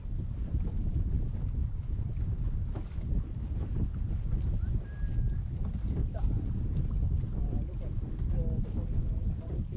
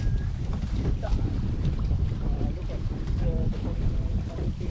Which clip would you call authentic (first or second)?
first